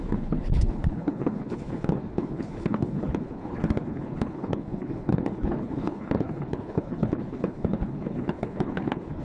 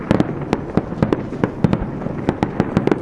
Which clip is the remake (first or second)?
first